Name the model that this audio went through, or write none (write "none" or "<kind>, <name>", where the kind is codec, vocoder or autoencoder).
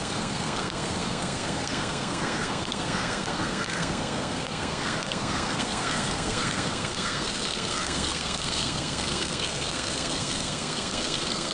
codec, SNAC